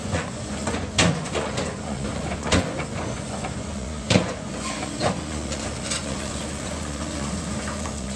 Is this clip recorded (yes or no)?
no